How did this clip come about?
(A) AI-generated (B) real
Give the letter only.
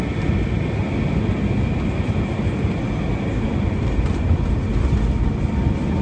B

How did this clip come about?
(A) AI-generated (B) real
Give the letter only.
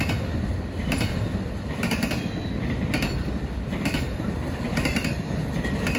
A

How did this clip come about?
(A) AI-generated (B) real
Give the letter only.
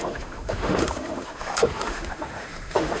A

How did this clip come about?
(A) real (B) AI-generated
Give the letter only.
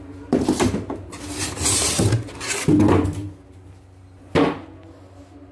A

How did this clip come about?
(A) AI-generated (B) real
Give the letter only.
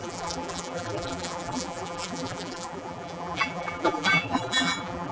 A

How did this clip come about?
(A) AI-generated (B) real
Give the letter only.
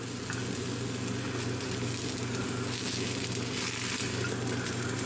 B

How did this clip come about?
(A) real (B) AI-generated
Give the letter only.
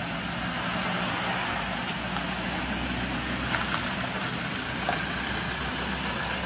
A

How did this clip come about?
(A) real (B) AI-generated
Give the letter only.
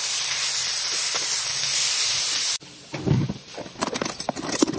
B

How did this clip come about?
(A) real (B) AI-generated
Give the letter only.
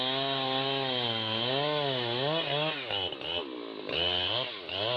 A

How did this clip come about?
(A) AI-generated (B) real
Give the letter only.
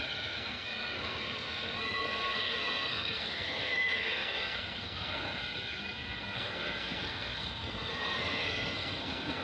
A